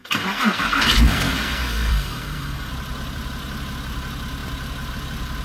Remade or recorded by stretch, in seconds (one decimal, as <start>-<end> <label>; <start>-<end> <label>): 0.0-2.7 remade; 2.7-5.4 recorded

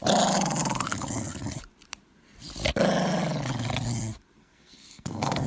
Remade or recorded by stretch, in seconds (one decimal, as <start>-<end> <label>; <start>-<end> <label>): 0.0-4.4 recorded; 4.4-5.5 remade

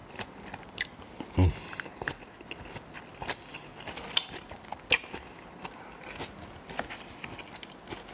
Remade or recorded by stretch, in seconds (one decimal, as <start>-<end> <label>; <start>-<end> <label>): 0.0-8.1 recorded

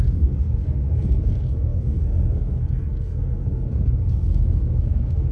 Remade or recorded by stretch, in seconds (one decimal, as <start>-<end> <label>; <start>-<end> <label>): 0.0-5.3 remade

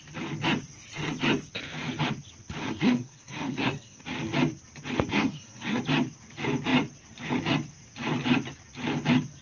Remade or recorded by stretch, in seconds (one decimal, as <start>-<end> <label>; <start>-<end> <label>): 0.0-2.6 recorded; 2.6-4.0 remade; 4.0-5.1 recorded; 5.1-5.8 remade; 5.8-9.4 recorded

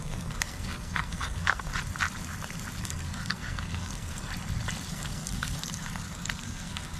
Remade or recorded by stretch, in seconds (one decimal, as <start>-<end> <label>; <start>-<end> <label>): 0.0-1.7 remade; 1.7-2.8 recorded; 2.8-4.3 remade; 4.3-4.9 recorded; 4.9-7.0 remade

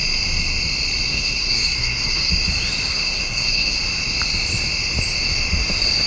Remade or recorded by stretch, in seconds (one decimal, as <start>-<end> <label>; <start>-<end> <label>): 0.0-1.1 recorded; 1.1-2.3 remade; 2.3-2.9 recorded; 2.9-3.8 remade; 3.8-6.1 recorded

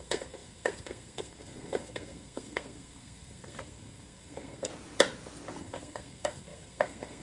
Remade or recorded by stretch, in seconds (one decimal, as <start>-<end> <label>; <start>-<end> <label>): 0.0-4.7 remade; 4.7-5.6 recorded; 5.6-7.2 remade